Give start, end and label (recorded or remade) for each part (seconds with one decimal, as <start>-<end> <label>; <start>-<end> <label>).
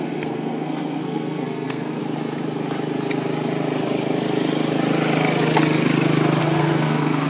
0.0-2.0 remade; 2.0-6.4 recorded; 6.4-7.3 remade